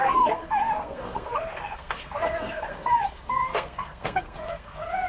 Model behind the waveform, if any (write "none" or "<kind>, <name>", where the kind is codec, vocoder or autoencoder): codec, SNAC